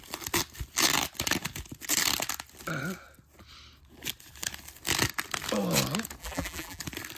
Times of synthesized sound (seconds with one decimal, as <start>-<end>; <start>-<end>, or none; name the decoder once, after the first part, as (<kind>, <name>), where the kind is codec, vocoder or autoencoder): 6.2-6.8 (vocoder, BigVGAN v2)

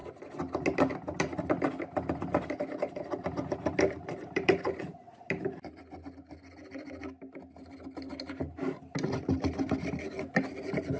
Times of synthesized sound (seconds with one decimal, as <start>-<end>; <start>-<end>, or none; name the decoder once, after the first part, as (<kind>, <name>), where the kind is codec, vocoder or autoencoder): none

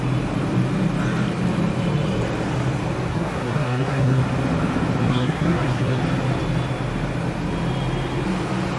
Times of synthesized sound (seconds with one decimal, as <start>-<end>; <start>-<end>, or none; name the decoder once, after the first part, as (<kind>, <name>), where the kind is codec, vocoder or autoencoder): 3.1-4.2 (codec, SNAC); 5.0-6.0

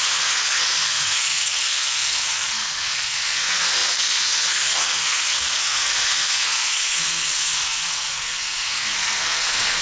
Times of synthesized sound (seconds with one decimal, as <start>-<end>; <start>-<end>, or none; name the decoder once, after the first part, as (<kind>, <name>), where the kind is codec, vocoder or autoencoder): 0.0-9.8 (codec, SNAC)

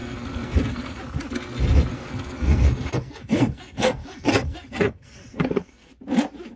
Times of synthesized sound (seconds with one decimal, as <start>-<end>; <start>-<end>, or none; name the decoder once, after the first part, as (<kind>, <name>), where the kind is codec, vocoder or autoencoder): 0.0-1.0 (codec, SNAC); 1.9-5.9